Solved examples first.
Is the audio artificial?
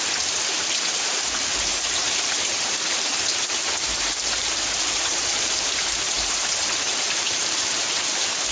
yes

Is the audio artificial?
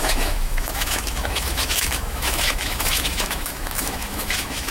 yes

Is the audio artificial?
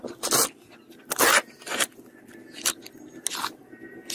no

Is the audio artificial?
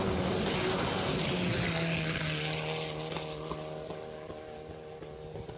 no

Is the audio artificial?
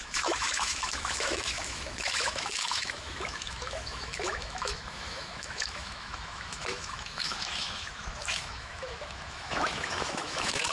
yes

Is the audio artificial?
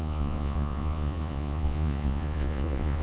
yes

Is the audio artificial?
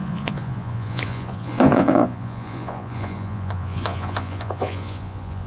yes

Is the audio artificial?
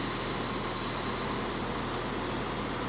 no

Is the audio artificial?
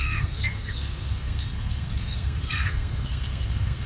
yes